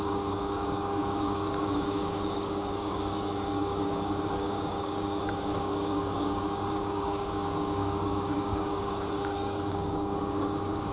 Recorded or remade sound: remade